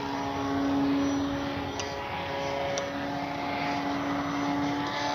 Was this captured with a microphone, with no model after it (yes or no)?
yes